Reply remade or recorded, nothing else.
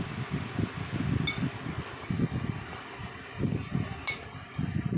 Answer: recorded